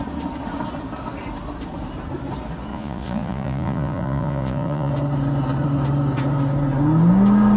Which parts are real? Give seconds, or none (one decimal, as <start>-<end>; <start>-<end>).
0.0-2.7; 4.9-7.6